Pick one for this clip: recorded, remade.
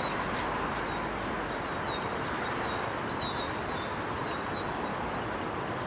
recorded